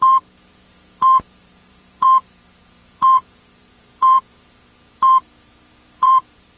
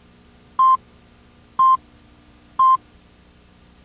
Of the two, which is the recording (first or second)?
second